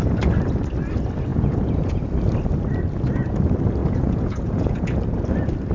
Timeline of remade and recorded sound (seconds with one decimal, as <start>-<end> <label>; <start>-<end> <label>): 0.0-1.3 recorded; 1.3-2.0 remade; 2.0-3.8 recorded; 3.8-4.9 remade; 4.9-5.7 recorded